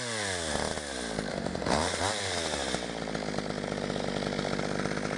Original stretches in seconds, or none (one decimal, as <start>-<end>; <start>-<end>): 0.0-1.3; 2.0-5.2

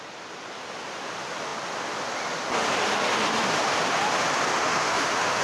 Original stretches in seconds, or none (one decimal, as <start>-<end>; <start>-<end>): 0.0-4.6

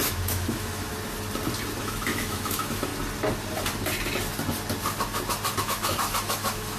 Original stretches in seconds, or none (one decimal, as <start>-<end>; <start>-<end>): 0.9-1.8; 2.9-5.6

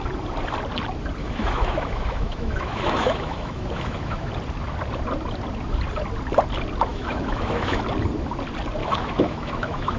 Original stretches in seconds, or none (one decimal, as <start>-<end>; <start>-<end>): 0.0-1.2; 4.3-6.9; 7.8-8.8

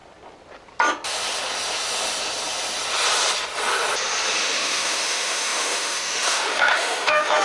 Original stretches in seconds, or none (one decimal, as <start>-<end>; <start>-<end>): 0.0-4.4

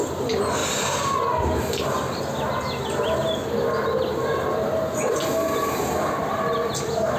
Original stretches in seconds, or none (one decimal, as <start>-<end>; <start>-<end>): 0.0-7.2